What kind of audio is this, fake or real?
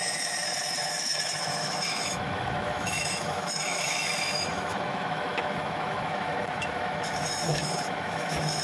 fake